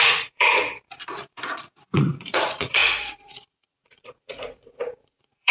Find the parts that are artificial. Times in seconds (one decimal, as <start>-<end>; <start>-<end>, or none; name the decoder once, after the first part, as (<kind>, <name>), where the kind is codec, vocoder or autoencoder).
0.0-0.5 (vocoder, Vocos); 1.3-5.5